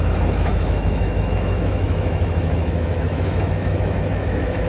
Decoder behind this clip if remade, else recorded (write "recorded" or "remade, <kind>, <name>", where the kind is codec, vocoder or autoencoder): remade, autoencoder, DAC-VAE